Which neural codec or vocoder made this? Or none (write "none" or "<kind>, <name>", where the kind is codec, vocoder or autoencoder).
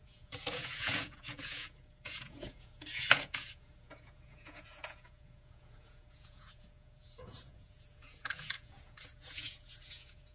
vocoder, Vocos